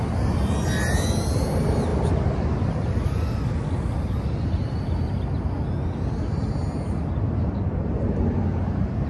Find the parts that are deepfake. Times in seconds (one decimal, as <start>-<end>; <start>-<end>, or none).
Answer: none